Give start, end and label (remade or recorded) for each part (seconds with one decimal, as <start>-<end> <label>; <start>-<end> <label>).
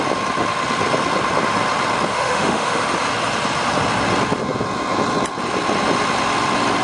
0.0-2.1 recorded; 2.1-2.8 remade; 2.8-6.8 recorded